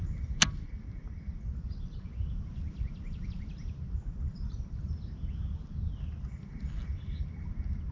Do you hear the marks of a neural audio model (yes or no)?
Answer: no